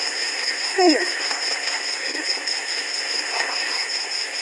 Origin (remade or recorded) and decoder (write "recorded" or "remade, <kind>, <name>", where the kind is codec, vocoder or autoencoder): remade, codec, SNAC